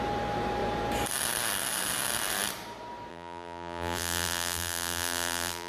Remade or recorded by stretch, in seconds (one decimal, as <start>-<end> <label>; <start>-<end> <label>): 0.0-3.1 recorded; 3.1-5.7 remade